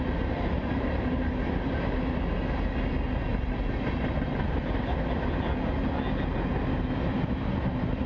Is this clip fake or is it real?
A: real